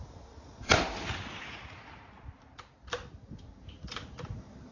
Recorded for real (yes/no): yes